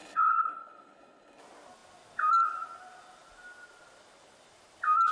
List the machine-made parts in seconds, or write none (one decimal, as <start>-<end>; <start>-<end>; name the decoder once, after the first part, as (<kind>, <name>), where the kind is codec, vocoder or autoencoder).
0.0-1.4 (codec, HILCodec)